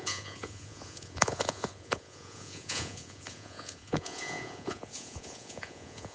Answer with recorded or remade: remade